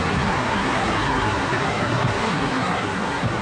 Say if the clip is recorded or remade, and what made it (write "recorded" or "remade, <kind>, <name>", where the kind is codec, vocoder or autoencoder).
remade, codec, SNAC